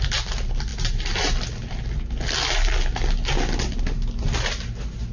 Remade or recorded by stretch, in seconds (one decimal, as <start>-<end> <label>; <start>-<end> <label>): 0.0-5.1 recorded